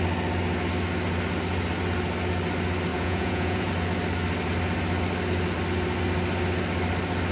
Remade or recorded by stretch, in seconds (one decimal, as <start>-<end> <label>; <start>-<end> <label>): 0.0-2.9 recorded; 2.9-3.7 remade; 3.7-7.3 recorded